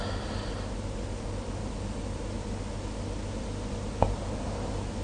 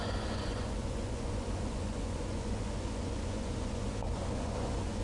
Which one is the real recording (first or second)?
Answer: first